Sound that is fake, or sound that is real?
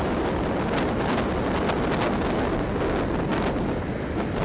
real